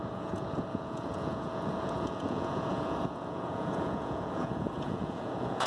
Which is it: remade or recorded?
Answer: remade